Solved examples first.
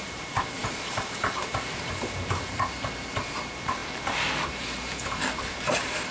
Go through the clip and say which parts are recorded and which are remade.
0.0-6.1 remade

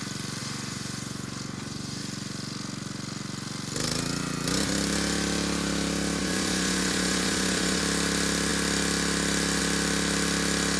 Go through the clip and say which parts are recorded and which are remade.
0.0-0.4 recorded; 0.4-2.0 remade; 2.0-6.2 recorded; 6.2-7.8 remade; 7.8-10.8 recorded